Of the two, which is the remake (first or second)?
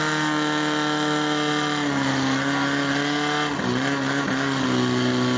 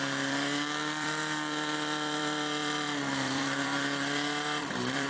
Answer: second